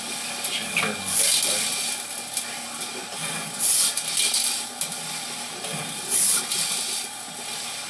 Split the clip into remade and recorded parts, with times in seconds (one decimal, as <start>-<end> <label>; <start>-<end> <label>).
0.0-7.9 recorded